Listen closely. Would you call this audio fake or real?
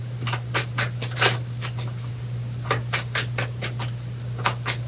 real